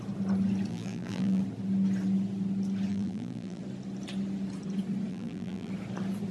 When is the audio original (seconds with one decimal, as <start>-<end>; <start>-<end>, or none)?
0.0-0.7; 1.4-2.9; 3.6-5.1; 5.7-6.3